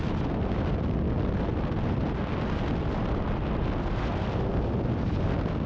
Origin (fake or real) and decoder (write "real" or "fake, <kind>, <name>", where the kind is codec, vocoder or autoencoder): real